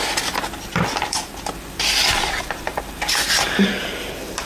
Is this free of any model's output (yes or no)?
yes